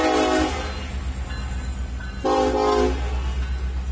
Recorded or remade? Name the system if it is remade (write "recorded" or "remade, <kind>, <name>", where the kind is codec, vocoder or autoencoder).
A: recorded